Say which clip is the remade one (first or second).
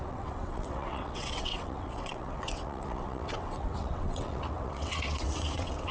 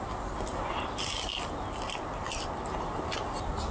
first